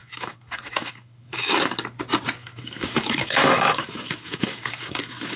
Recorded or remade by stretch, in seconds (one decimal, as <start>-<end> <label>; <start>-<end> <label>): 0.0-1.7 remade; 1.7-2.4 recorded; 2.4-5.4 remade